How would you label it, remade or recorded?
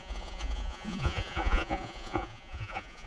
remade